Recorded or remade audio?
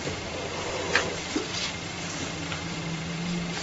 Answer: remade